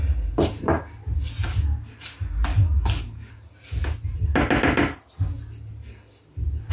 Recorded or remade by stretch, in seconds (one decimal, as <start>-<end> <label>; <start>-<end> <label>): 0.0-2.5 recorded; 2.5-3.3 remade; 3.3-6.7 recorded

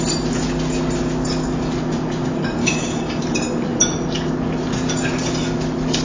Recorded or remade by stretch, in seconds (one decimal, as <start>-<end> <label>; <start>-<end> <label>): 0.0-2.6 recorded; 2.6-3.2 remade; 3.2-6.0 recorded

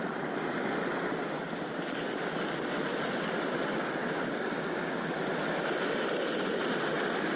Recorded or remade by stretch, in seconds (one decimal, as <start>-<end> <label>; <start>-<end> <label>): 0.0-4.0 recorded; 4.0-5.1 remade; 5.1-7.4 recorded